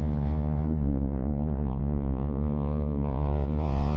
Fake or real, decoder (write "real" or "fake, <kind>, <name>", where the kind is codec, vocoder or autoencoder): fake, vocoder, Vocos